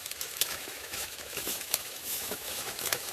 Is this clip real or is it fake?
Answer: fake